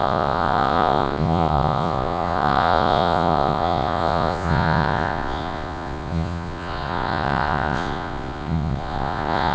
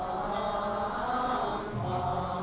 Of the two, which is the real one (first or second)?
second